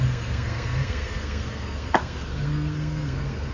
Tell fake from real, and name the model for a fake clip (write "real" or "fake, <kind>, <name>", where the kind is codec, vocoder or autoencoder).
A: fake, codec, SNAC